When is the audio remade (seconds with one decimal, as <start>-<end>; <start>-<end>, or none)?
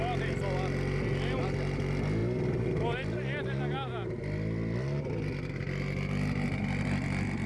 none